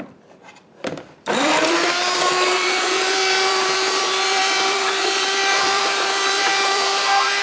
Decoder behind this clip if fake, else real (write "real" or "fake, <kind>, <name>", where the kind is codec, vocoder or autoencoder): fake, vocoder, BigVGAN v2